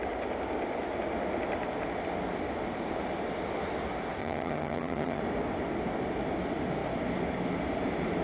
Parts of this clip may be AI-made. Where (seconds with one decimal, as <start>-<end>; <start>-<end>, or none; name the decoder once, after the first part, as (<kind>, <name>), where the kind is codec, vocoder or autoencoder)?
4.2-5.2 (vocoder, HiFi-GAN)

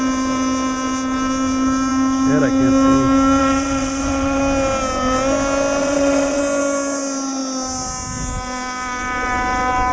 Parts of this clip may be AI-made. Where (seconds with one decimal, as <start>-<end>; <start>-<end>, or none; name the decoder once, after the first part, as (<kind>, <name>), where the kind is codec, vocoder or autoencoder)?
3.4-4.4 (vocoder, WaveNeXt); 5.8-6.4